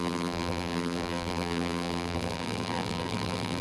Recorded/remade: remade